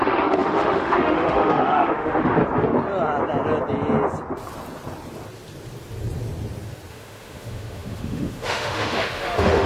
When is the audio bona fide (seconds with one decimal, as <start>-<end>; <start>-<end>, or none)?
2.4-6.9